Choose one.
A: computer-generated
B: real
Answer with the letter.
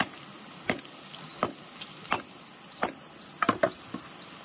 B